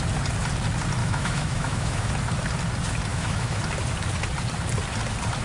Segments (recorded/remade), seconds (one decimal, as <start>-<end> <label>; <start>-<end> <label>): 0.0-1.0 recorded; 1.0-2.1 remade; 2.1-3.1 recorded; 3.1-3.6 remade; 3.6-5.4 recorded